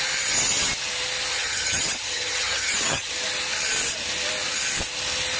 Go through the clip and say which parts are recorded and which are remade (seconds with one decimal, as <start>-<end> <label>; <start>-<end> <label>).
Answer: 0.0-1.3 recorded; 1.3-3.1 remade; 3.1-5.4 recorded